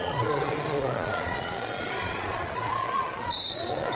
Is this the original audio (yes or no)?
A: no